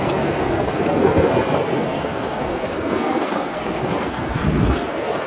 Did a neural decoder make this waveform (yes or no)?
yes